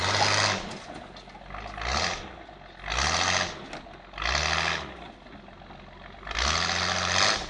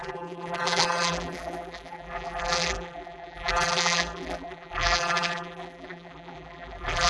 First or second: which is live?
first